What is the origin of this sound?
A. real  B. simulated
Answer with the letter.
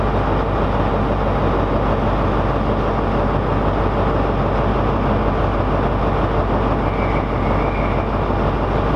A